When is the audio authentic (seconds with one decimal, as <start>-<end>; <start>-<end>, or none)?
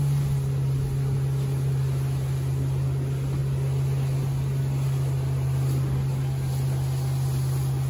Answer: 0.0-7.9